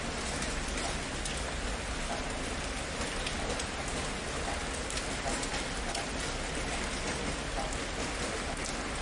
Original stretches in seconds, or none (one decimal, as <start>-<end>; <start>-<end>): 0.0-9.0